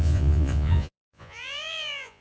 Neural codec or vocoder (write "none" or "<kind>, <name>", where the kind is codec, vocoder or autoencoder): vocoder, Vocos